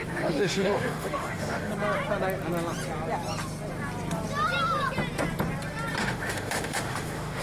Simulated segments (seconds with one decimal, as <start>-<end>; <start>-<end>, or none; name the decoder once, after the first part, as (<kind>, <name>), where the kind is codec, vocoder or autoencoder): 0.0-1.7 (autoencoder, DAC-VAE); 6.0-7.4